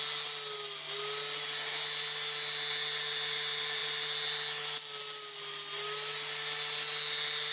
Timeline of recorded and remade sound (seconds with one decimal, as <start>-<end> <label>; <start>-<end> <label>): 0.0-7.5 recorded